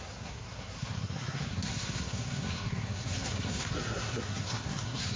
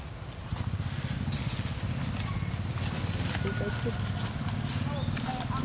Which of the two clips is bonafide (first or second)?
second